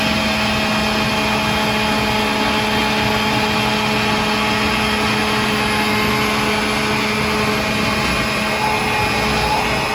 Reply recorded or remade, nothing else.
recorded